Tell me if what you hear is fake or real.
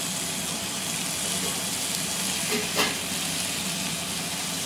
real